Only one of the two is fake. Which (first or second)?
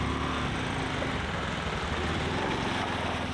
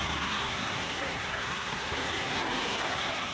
second